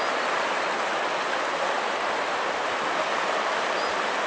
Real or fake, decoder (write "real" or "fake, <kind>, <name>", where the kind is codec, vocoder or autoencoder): real